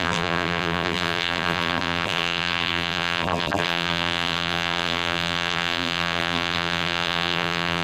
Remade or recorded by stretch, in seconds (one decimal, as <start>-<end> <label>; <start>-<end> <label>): 0.0-7.8 remade